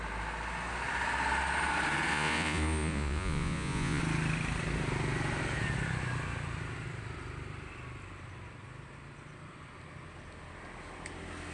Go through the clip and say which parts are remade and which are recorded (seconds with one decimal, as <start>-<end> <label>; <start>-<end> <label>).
0.0-2.1 recorded; 2.1-4.0 remade; 4.0-11.5 recorded